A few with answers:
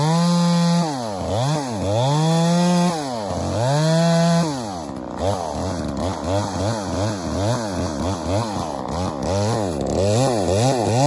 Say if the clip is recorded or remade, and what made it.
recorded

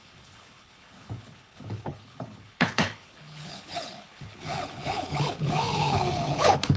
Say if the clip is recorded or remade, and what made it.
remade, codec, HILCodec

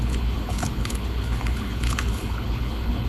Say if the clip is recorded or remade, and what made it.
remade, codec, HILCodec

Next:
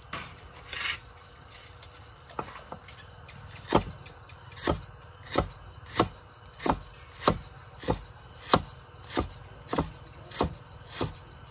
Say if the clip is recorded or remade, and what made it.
recorded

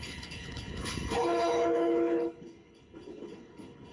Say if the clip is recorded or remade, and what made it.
remade, codec, HILCodec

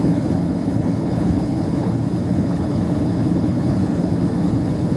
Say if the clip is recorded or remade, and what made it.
remade, codec, HILCodec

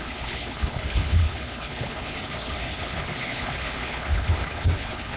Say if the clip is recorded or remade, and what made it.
remade, codec, HILCodec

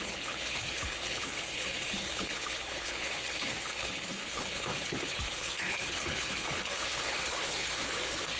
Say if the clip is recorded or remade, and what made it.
remade, codec, HILCodec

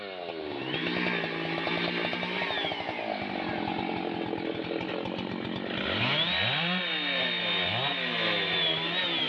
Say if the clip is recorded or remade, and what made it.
recorded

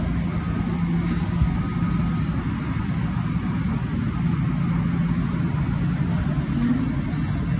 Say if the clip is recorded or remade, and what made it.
recorded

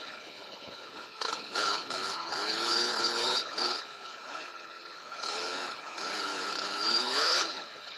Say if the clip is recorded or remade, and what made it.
remade, codec, HILCodec